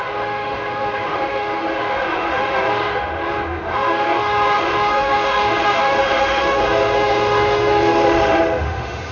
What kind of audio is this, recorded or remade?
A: remade